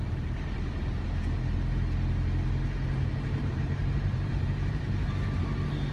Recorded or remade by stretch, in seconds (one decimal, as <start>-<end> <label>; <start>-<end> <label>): 0.0-3.4 recorded; 3.4-5.4 remade; 5.4-5.9 recorded